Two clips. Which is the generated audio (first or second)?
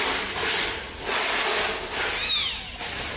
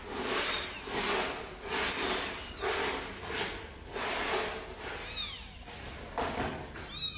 first